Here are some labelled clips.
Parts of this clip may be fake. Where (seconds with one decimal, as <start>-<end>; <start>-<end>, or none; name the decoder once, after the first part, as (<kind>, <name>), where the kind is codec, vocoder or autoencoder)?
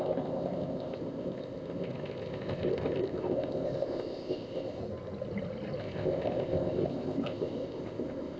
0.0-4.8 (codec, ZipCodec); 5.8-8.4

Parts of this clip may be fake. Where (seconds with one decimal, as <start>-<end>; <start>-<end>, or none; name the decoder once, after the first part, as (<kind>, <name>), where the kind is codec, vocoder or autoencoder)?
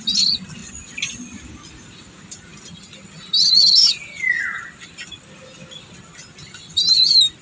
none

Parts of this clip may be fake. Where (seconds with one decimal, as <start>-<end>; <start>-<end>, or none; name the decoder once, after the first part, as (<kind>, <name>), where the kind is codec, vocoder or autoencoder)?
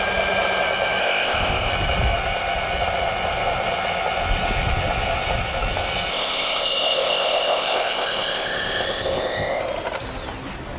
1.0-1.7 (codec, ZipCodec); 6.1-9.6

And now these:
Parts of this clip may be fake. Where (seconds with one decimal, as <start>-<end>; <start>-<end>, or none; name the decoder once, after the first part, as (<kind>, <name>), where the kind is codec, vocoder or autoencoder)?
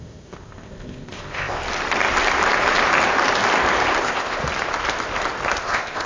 0.0-1.6 (codec, ZipCodec); 4.0-4.4; 5.6-6.1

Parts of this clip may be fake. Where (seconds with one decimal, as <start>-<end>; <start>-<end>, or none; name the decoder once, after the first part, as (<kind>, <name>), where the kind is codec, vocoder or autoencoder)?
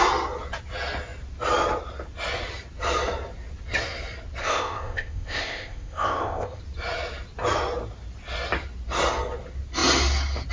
4.4-6.6 (codec, ZipCodec)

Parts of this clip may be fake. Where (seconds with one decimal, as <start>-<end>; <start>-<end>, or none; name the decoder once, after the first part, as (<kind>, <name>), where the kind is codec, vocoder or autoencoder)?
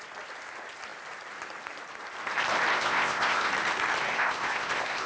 2.7-3.5 (codec, ZipCodec); 4.1-5.1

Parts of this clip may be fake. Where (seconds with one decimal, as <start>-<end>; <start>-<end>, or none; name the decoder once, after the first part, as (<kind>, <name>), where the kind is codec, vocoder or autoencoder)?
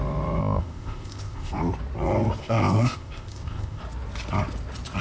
0.4-1.6 (codec, ZipCodec); 2.4-3.8